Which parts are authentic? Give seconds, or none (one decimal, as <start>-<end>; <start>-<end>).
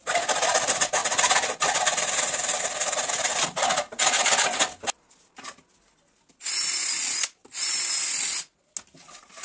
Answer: 0.0-7.4; 7.9-9.4